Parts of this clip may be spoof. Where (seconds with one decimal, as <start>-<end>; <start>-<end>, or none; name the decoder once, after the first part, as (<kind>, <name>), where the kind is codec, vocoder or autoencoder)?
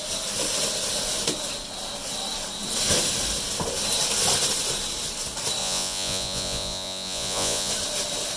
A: 5.6-7.7 (vocoder, Vocos)